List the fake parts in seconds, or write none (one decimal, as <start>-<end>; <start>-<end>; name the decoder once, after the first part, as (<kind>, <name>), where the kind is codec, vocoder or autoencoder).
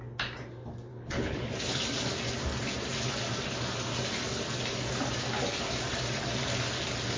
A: 0.9-1.5 (codec, HILCodec)